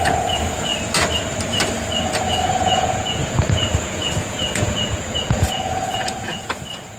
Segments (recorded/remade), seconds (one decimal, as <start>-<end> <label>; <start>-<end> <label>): 0.0-0.7 remade; 0.7-2.1 recorded; 2.1-7.0 remade